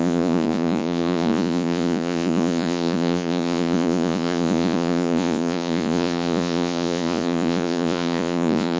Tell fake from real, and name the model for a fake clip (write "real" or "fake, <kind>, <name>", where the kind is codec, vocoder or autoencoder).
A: fake, vocoder, Vocos